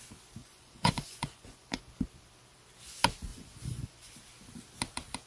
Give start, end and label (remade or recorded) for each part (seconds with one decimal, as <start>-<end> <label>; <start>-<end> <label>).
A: 0.0-0.4 recorded; 0.4-1.8 remade; 1.8-3.3 recorded; 3.3-4.1 remade; 4.1-5.3 recorded